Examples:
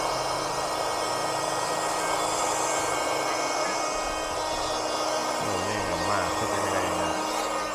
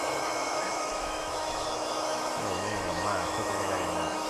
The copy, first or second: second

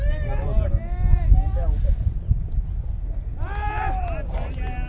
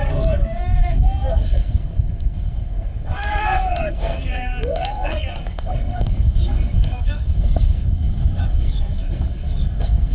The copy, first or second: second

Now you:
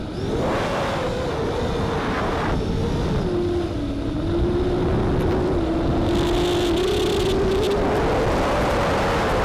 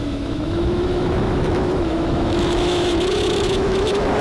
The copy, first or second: second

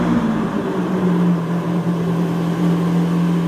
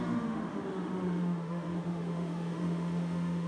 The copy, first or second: second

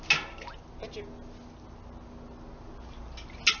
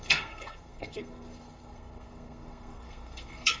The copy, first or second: second